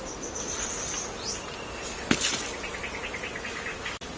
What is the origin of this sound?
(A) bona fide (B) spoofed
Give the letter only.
A